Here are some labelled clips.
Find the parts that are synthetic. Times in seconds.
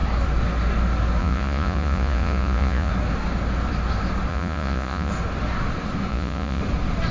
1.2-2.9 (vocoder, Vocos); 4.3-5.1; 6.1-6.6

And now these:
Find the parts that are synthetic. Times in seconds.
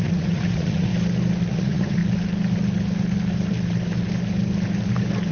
0.0-0.9 (vocoder, Vocos); 1.5-2.0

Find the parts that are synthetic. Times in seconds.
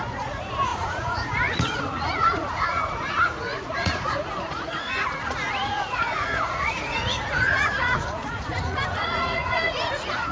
0.0-10.3 (vocoder, Vocos)